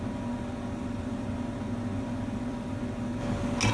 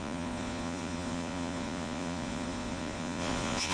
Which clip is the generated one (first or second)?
second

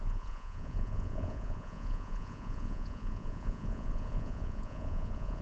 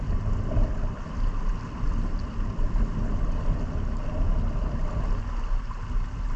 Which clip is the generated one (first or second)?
first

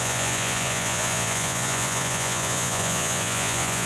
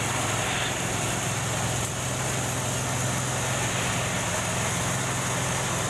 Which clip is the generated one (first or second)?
first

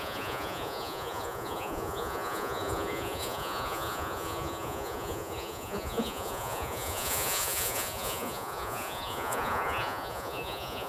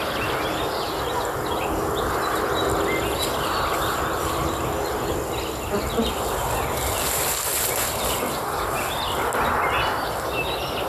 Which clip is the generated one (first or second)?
first